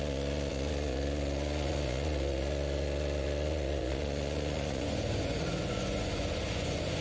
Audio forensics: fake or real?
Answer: fake